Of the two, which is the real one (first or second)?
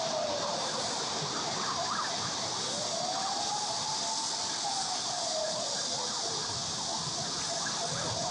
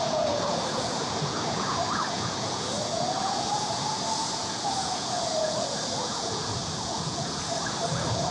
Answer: first